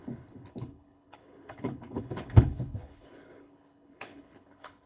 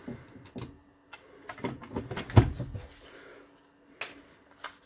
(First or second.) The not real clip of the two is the first